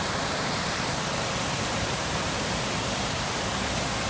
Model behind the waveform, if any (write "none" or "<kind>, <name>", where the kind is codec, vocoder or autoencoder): vocoder, BigVGAN v2